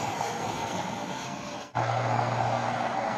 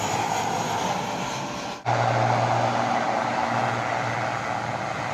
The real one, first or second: second